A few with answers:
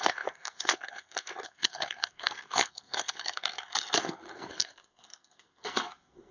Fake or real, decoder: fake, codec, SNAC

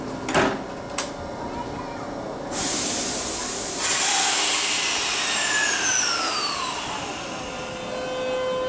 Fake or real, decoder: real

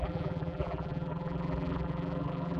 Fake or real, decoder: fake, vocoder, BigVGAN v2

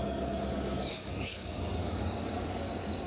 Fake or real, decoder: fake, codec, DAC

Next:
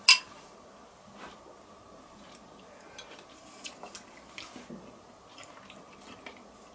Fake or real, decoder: real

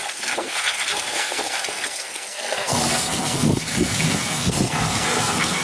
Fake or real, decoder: fake, codec, SNAC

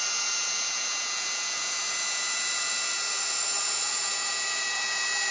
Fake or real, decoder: fake, vocoder, Vocos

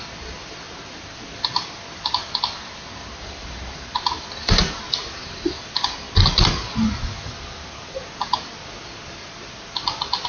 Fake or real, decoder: real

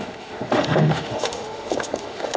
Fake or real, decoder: fake, autoencoder, DAC-VAE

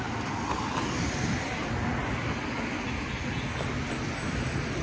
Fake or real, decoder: real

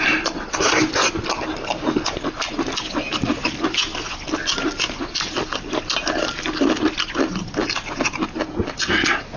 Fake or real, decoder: real